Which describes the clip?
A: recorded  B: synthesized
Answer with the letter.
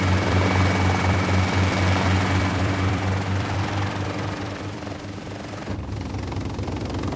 B